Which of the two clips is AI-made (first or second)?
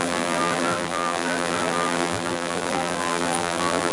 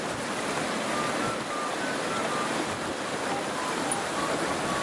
first